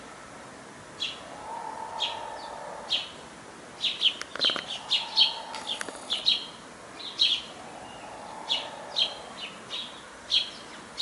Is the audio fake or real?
real